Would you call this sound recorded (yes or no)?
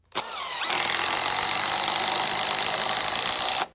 yes